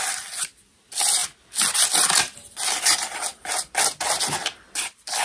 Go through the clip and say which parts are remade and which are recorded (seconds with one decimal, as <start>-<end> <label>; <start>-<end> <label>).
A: 0.0-5.2 recorded